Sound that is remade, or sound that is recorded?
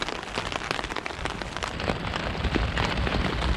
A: recorded